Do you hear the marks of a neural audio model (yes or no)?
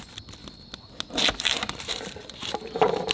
no